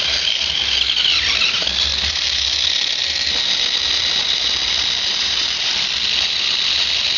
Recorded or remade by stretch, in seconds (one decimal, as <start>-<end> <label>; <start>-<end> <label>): 0.0-1.9 recorded; 1.9-2.4 remade; 2.4-5.1 recorded; 5.1-5.7 remade; 5.7-7.2 recorded